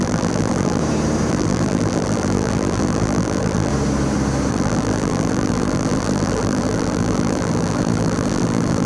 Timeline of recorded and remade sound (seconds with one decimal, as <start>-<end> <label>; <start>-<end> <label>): 0.0-0.8 remade; 0.8-1.3 recorded; 1.3-3.7 remade; 3.7-4.5 recorded; 4.5-8.9 remade